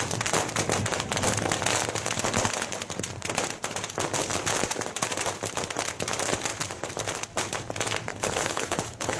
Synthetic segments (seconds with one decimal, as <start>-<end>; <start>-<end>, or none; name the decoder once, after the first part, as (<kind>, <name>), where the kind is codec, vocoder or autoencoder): 8.1-9.2 (codec, HILCodec)